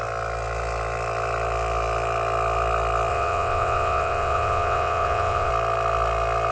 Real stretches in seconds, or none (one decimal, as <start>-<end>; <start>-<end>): 0.0-3.1; 5.5-6.5